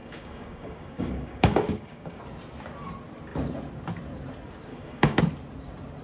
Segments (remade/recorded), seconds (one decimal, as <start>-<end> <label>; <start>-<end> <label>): 0.0-2.2 remade; 2.2-4.7 recorded; 4.7-5.2 remade; 5.2-6.0 recorded